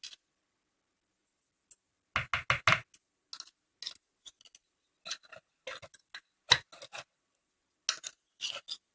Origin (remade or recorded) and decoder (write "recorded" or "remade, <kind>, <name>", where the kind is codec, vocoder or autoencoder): recorded